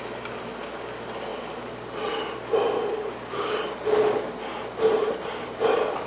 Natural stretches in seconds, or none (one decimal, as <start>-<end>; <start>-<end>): 0.0-5.0; 5.6-6.1